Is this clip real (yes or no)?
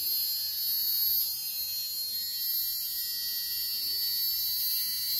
yes